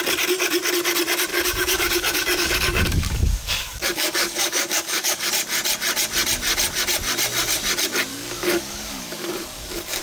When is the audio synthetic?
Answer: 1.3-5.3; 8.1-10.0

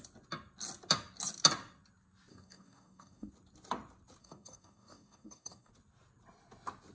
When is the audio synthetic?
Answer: 2.3-3.3; 4.2-5.7

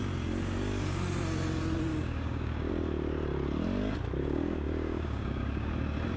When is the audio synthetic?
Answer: 1.9-2.7; 4.2-5.7

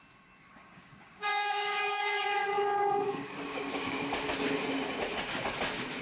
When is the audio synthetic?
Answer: 0.5-4.0

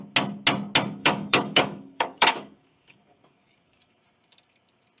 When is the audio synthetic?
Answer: 1.0-4.0